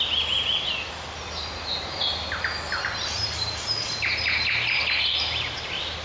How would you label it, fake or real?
real